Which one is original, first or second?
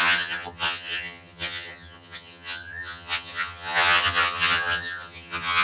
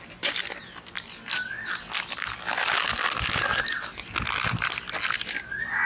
second